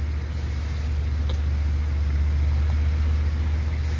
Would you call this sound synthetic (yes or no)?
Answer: no